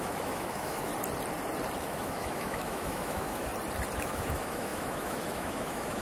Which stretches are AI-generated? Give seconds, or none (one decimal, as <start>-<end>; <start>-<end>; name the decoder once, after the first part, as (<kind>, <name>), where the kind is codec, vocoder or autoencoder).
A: 0.0-0.9 (autoencoder, DAC-VAE); 1.8-3.5; 4.0-6.0